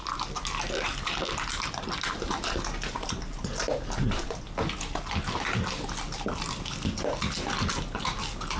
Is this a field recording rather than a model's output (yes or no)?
yes